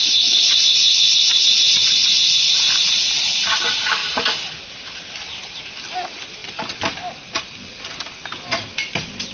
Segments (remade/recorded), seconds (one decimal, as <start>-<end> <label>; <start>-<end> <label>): 0.0-9.3 recorded